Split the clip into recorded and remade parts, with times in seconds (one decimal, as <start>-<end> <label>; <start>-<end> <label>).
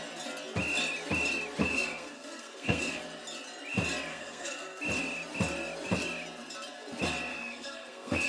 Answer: 0.0-1.6 recorded; 1.6-3.0 remade; 3.0-4.1 recorded; 4.1-4.8 remade; 4.8-7.3 recorded; 7.3-8.3 remade